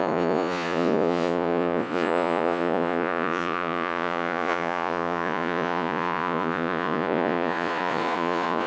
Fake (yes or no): yes